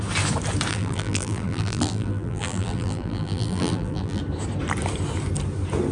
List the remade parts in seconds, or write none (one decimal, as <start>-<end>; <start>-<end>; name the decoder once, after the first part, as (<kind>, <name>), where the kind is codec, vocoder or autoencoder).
0.7-4.2 (vocoder, BigVGAN v2)